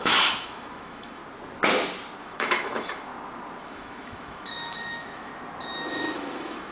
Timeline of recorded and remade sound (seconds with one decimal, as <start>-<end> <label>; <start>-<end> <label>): 0.0-1.2 remade; 1.2-2.2 recorded; 2.2-3.1 remade; 3.1-3.6 recorded; 3.6-5.3 remade; 5.3-5.9 recorded; 5.9-6.7 remade